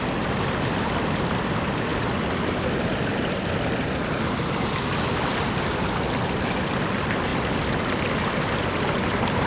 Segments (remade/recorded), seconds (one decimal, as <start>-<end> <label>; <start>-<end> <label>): 0.0-9.5 recorded

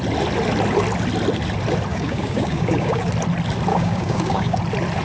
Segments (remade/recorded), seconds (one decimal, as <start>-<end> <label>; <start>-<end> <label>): 0.0-1.9 recorded; 1.9-3.1 remade; 3.1-3.7 recorded; 3.7-4.6 remade; 4.6-5.0 recorded